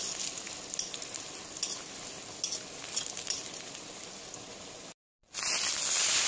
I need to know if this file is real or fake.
real